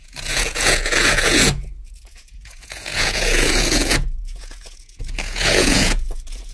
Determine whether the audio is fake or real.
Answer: fake